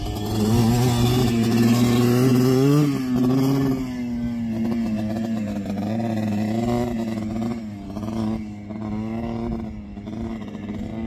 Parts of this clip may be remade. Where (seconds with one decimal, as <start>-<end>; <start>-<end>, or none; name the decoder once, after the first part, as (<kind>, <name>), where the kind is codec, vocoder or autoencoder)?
none